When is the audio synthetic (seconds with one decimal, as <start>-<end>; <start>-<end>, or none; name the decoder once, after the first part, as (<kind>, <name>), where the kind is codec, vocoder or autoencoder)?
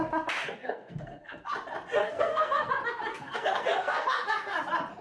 0.4-1.5 (codec, SNAC); 2.0-2.7; 3.1-4.6